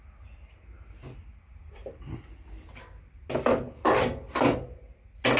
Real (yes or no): yes